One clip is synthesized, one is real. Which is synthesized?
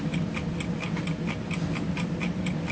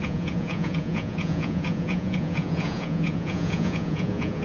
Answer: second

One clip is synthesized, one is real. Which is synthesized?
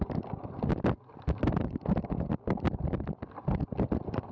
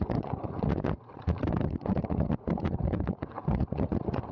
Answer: second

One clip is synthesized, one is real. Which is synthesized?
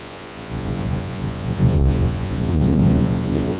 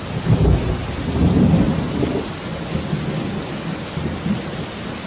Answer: first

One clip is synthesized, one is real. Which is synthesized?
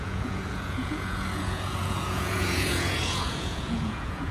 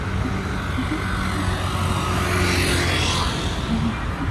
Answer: first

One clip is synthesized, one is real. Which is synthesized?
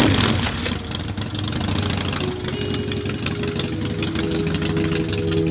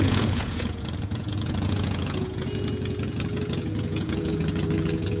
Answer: second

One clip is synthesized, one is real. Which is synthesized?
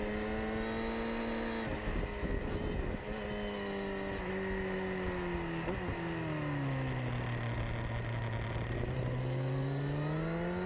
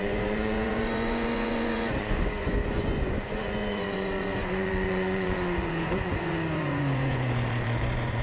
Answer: second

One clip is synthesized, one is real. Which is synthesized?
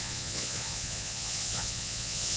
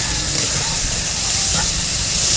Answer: first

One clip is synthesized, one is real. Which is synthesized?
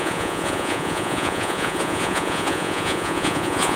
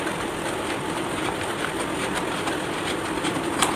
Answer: first